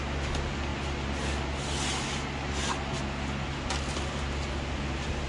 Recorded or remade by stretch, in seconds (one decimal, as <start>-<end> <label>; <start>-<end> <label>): 0.0-5.3 recorded